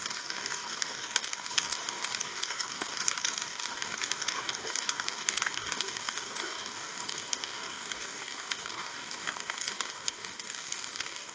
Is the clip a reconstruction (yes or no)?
yes